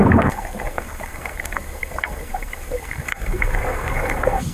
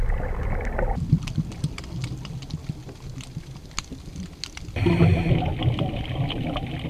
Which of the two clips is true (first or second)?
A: second